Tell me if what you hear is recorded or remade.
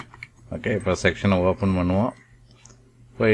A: recorded